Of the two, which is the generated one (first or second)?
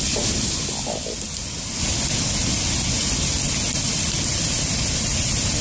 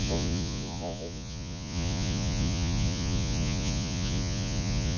second